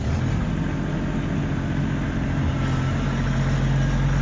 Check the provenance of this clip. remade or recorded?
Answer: recorded